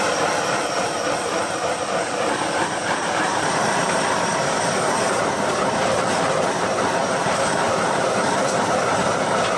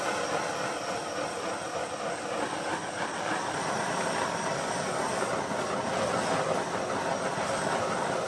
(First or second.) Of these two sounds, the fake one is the first